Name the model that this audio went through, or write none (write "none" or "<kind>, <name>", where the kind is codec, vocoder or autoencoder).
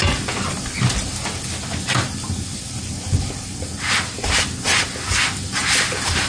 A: none